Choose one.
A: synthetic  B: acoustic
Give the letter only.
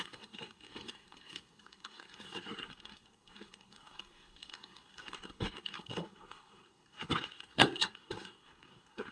A